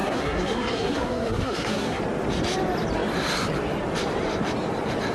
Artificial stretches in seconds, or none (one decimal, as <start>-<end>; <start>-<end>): 0.0-2.0